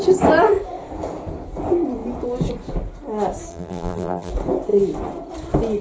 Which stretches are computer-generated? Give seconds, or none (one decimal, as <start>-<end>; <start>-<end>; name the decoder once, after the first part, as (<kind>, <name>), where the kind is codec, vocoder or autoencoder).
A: 3.5-4.3 (vocoder, BigVGAN v2)